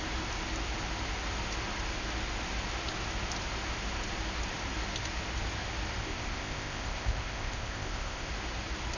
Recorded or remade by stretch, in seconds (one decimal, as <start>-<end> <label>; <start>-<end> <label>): 0.0-6.0 recorded; 6.0-8.3 remade; 8.3-9.0 recorded